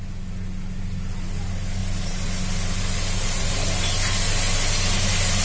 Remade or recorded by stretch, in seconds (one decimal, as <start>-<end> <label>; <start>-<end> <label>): 0.0-5.4 recorded